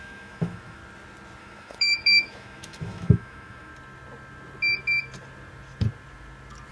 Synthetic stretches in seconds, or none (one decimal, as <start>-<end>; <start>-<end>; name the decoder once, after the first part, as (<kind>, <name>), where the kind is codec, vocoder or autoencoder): 0.0-0.8 (autoencoder, DAC-VAE); 1.4-3.7